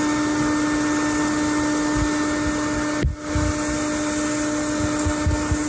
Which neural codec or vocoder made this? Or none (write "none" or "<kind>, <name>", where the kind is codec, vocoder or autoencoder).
none